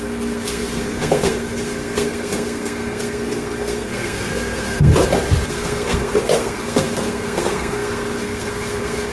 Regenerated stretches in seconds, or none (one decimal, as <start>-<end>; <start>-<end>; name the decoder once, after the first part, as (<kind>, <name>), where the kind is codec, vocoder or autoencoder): 0.0-4.9 (codec, SNAC); 5.5-9.1